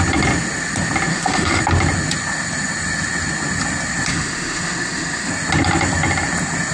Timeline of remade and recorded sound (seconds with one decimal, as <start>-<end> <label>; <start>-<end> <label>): 0.0-1.1 recorded; 1.1-1.6 remade; 1.6-4.1 recorded; 4.1-5.3 remade; 5.3-6.7 recorded